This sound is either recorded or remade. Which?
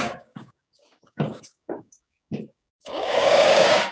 remade